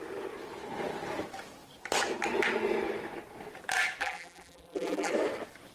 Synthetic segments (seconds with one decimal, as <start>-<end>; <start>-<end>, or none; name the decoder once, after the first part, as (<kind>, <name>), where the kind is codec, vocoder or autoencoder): 4.0-5.1 (vocoder, BigVGAN v2)